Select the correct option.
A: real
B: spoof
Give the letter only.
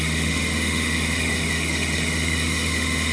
B